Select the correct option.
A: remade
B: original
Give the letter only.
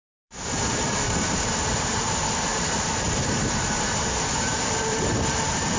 A